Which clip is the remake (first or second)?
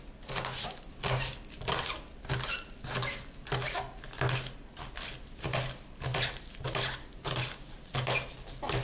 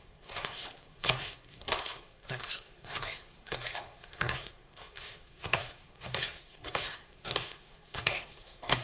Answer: second